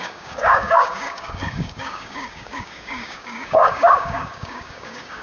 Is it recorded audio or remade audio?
remade